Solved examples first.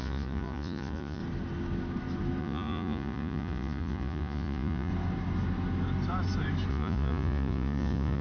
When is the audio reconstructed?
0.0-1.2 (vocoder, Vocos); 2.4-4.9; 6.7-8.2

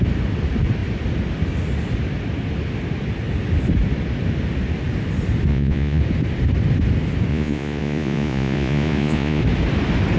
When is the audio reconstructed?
5.5-6.0 (vocoder, Vocos); 7.3-9.4

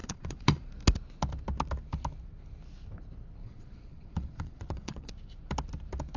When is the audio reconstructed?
0.0-0.7 (vocoder, Vocos); 3.4-5.1

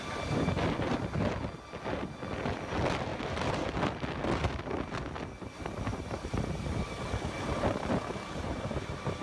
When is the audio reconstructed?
none

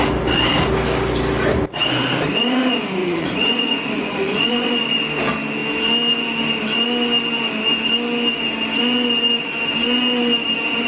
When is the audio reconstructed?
3.0-5.0 (vocoder, Vocos)

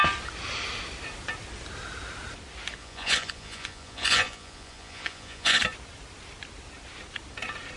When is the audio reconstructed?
2.8-5.6 (vocoder, Vocos)